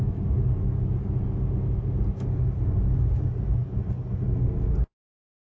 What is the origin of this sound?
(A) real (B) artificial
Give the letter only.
A